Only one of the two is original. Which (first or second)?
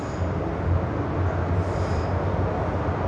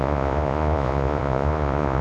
first